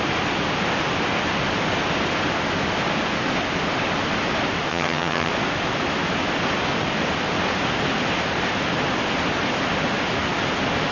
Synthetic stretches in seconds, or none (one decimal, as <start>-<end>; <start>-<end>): 4.7-5.3